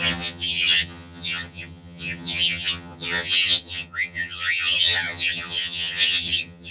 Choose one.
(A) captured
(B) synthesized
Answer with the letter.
B